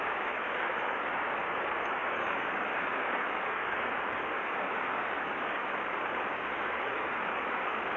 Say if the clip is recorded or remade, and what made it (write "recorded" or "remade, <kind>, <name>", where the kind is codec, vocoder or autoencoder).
remade, codec, DAC